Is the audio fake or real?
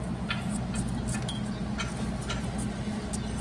real